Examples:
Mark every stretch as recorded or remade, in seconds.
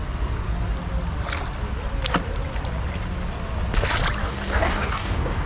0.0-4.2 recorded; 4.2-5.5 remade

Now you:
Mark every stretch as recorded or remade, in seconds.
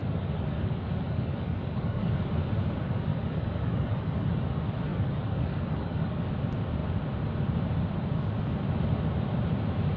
0.0-2.3 remade; 2.3-3.1 recorded; 3.1-4.4 remade; 4.4-4.9 recorded; 4.9-6.3 remade; 6.3-10.0 recorded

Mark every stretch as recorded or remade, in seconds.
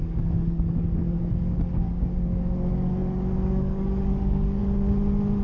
0.0-4.6 remade; 4.6-5.4 recorded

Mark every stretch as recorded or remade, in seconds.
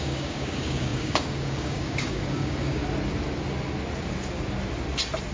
0.0-2.8 remade; 2.8-5.3 recorded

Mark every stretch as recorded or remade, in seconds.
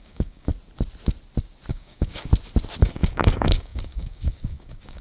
0.0-0.5 remade; 0.5-1.7 recorded; 1.7-2.3 remade; 2.3-2.8 recorded; 2.8-5.0 remade